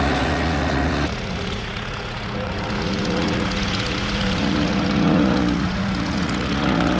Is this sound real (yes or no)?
no